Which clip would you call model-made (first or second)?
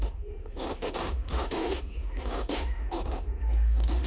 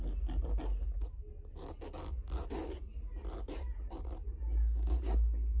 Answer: first